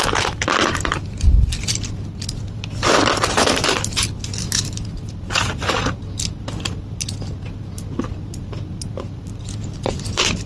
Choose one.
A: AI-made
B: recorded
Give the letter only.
B